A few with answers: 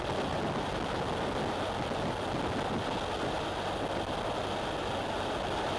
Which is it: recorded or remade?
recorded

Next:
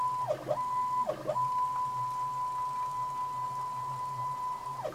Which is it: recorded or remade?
recorded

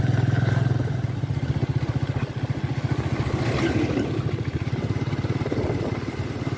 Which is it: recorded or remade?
recorded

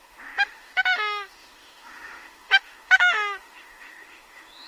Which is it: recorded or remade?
remade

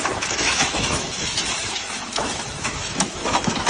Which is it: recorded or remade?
remade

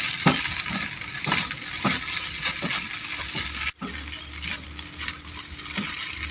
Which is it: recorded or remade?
recorded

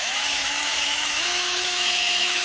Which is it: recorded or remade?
remade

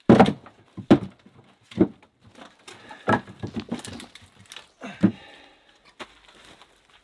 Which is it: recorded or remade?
recorded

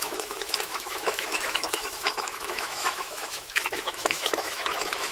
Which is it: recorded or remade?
remade